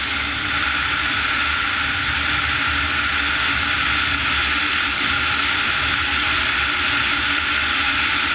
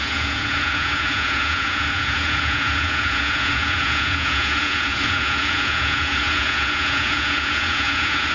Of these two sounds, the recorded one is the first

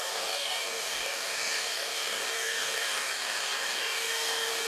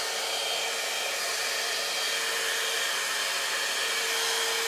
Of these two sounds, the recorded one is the second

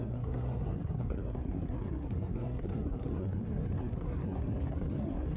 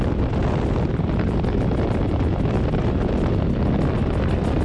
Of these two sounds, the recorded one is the second